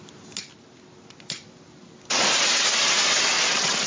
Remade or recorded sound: recorded